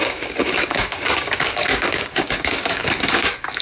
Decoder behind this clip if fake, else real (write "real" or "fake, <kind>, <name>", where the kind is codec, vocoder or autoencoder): fake, codec, DAC